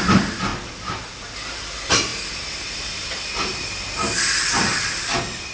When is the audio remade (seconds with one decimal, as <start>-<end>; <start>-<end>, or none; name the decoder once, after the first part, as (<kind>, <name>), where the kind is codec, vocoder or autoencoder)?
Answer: none